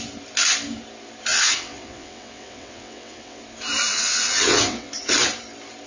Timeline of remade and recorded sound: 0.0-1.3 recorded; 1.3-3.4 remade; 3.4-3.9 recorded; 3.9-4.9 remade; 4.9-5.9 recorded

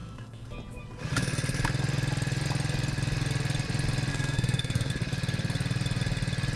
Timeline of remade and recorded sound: 0.0-0.5 remade; 0.5-4.1 recorded; 4.1-4.9 remade; 4.9-6.6 recorded

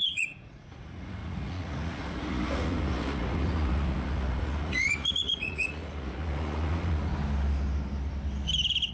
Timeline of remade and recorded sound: 0.0-7.1 remade; 7.1-8.9 recorded